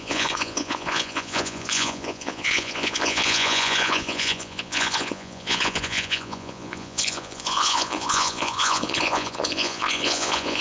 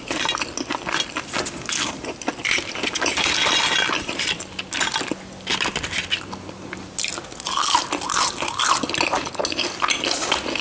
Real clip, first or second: second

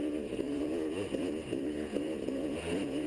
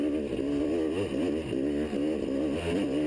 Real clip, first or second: second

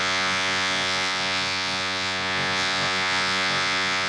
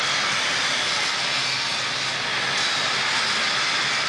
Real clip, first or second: second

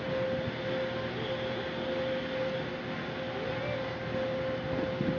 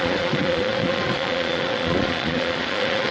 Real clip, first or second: first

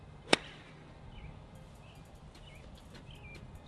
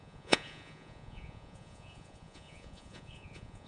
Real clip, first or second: first